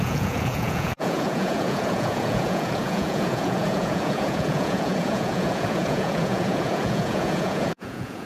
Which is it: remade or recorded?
remade